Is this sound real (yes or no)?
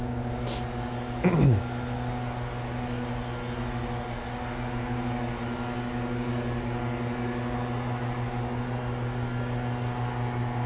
yes